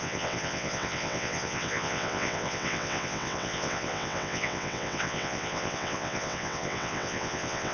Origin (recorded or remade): remade